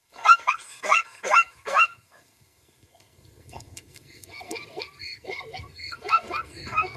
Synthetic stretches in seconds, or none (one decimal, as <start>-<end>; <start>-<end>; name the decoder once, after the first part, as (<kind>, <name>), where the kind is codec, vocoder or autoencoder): 0.0-7.0 (codec, SNAC)